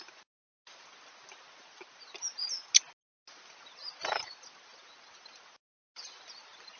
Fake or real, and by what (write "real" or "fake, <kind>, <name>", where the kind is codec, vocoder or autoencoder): real